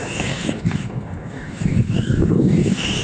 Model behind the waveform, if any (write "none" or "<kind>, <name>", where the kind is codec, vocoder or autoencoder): codec, DAC